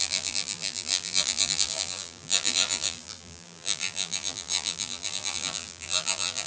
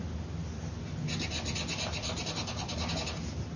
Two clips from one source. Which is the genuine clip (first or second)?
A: second